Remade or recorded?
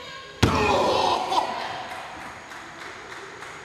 recorded